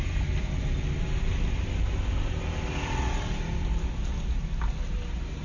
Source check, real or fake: real